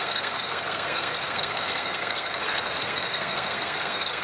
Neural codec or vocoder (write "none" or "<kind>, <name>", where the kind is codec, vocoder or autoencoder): codec, SNAC